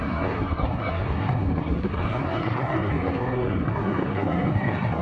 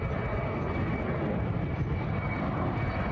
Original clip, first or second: second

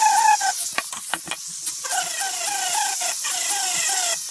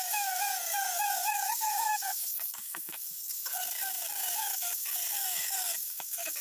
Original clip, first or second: first